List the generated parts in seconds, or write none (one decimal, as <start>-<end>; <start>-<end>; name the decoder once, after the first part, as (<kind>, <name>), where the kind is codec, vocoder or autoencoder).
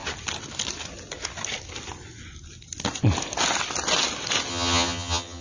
4.5-5.4 (vocoder, HiFi-GAN)